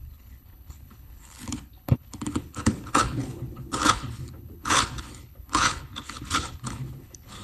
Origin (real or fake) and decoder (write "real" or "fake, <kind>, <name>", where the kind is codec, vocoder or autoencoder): fake, codec, HILCodec